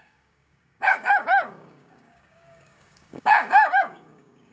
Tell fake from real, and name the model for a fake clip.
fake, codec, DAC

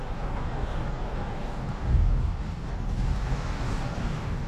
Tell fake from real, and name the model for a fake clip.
fake, codec, DAC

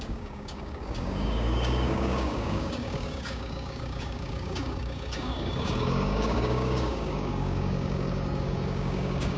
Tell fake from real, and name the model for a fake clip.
fake, codec, DAC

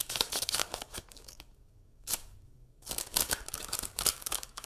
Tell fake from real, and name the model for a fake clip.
fake, codec, DAC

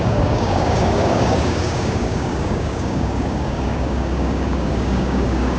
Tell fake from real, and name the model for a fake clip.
fake, codec, DAC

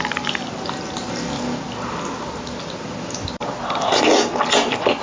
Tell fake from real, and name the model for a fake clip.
real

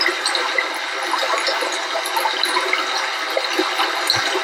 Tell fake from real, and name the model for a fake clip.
real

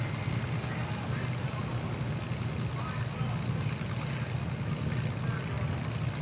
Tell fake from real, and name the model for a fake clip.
real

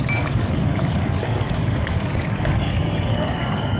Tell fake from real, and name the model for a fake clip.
fake, codec, DAC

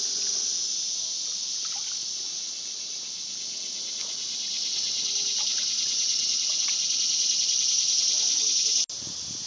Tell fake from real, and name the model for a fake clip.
real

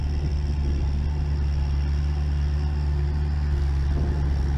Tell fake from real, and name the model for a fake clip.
real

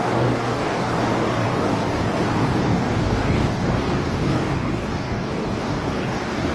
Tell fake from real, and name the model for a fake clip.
fake, codec, DAC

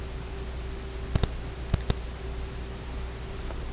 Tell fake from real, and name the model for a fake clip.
real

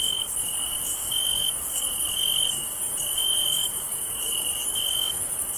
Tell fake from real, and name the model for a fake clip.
fake, codec, DAC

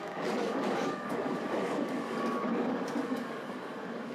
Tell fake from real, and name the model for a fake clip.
fake, codec, DAC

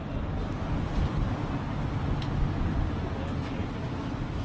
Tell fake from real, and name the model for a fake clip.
real